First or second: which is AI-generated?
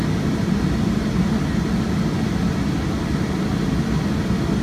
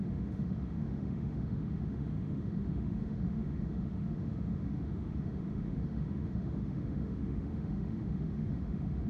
second